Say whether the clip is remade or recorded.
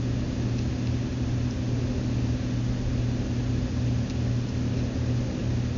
recorded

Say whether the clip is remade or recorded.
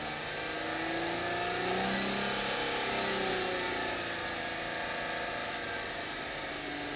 recorded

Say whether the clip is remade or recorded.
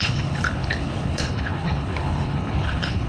remade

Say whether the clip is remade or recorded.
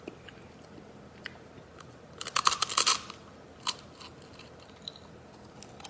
recorded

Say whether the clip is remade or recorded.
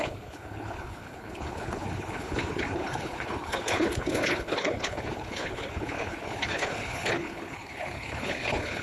remade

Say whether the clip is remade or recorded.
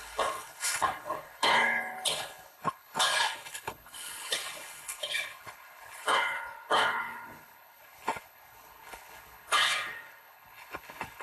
remade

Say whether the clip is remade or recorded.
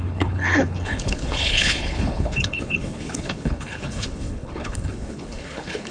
remade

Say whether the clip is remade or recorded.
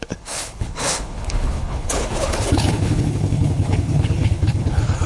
remade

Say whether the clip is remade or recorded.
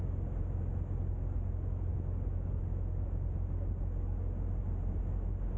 recorded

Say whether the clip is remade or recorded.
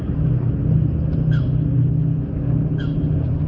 recorded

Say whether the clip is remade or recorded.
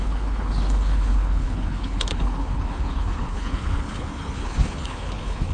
remade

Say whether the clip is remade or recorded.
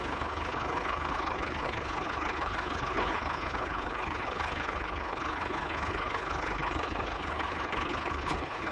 remade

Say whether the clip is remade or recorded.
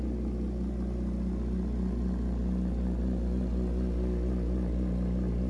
recorded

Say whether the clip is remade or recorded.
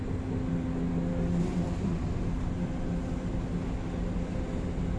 recorded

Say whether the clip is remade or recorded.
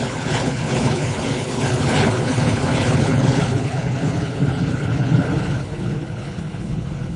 remade